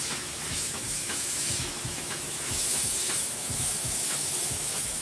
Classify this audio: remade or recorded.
remade